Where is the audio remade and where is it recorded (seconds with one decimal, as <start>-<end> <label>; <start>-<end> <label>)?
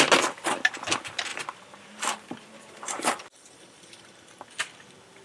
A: 0.0-1.3 recorded; 1.3-4.4 remade; 4.4-5.2 recorded